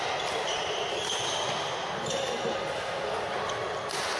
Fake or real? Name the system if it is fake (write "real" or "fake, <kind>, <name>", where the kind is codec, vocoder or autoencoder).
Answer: real